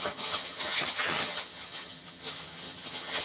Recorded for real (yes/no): no